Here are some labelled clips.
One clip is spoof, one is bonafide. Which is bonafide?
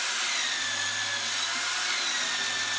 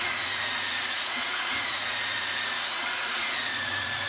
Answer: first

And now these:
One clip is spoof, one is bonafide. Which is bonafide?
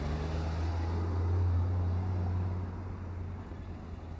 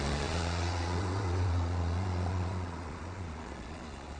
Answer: first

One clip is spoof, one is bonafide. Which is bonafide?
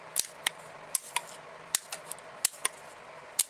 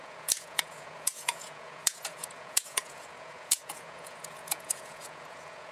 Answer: first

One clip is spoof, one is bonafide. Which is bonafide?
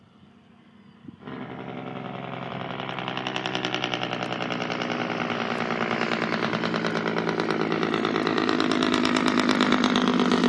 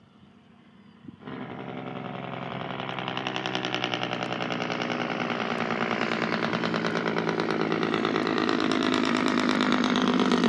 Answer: first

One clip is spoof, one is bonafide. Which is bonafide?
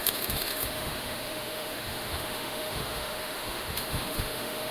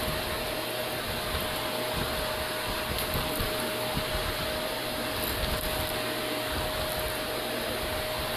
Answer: second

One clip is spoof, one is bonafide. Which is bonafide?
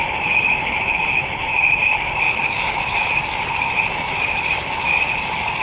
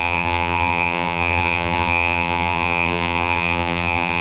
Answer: first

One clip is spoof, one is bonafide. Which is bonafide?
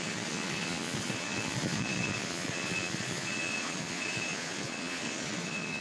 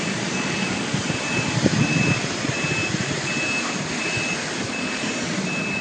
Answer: second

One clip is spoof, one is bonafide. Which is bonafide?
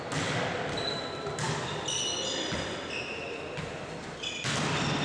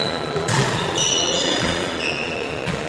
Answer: first